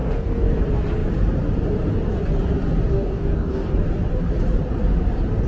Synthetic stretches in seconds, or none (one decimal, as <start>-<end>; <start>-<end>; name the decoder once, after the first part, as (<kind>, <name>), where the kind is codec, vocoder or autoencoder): 0.0-0.6 (codec, DAC); 2.9-3.7